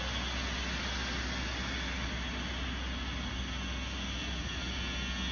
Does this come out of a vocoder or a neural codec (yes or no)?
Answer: no